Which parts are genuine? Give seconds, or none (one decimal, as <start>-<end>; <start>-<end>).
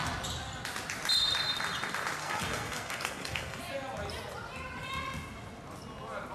0.0-2.2; 3.6-6.3